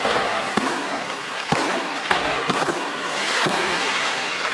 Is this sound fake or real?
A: fake